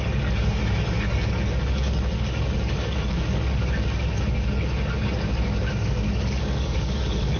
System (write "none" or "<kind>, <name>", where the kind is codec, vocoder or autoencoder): codec, DAC